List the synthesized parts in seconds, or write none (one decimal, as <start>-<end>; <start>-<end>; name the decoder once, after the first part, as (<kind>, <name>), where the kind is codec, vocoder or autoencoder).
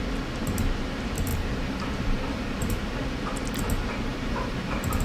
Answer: 1.3-3.1 (vocoder, BigVGAN v2); 4.1-5.0